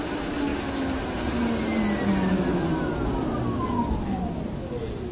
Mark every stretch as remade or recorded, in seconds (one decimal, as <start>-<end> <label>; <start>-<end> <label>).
0.0-5.1 recorded